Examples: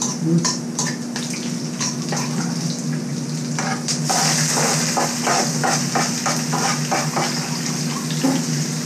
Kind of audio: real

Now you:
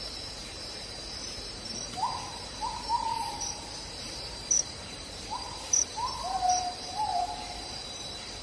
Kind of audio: fake